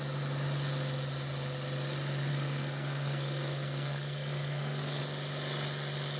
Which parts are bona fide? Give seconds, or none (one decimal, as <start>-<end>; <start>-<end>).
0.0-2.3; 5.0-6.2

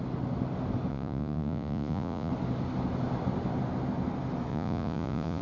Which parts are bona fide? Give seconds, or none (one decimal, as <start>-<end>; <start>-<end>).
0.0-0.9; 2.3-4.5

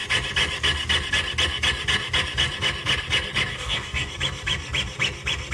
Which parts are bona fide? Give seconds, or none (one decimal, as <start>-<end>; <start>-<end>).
0.0-3.5; 4.1-5.5